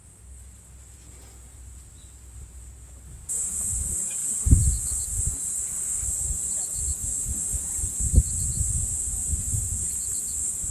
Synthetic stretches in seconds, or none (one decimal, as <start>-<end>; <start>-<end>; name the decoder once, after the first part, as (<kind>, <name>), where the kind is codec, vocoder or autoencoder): none